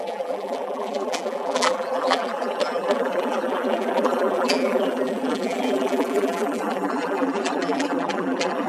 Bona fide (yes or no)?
no